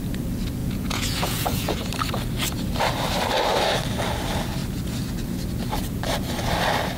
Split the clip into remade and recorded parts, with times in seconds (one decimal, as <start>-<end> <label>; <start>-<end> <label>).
0.0-0.6 recorded; 0.6-1.9 remade; 1.9-7.0 recorded